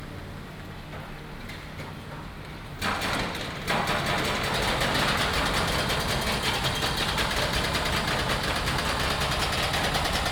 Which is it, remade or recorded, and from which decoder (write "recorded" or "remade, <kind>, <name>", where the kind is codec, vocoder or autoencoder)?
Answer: recorded